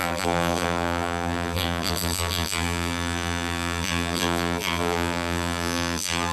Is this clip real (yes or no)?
no